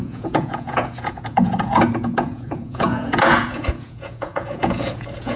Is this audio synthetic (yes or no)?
yes